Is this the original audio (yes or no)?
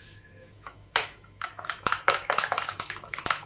no